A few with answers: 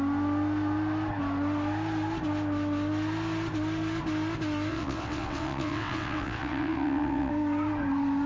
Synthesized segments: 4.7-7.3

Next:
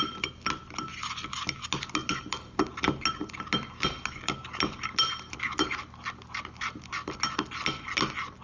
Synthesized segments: none

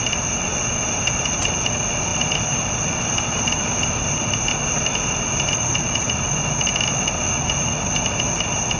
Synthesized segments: none

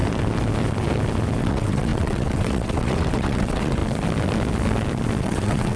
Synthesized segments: 1.4-3.8; 5.2-5.8

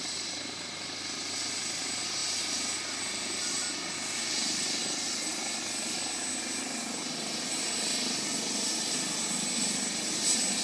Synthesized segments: none

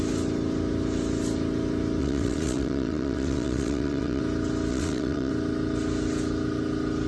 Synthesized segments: 2.0-4.2; 4.7-5.3